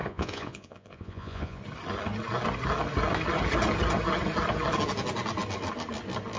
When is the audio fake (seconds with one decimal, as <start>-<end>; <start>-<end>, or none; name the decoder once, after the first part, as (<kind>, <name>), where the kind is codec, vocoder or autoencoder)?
0.0-1.6 (vocoder, Vocos)